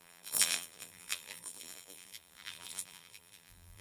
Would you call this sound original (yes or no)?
no